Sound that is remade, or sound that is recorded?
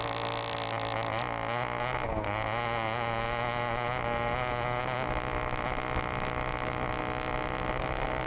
recorded